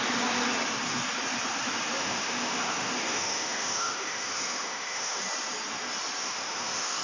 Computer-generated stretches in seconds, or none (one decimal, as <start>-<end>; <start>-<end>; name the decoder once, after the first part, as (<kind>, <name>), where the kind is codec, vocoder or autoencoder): 2.0-5.2 (autoencoder, DAC-VAE); 6.2-7.0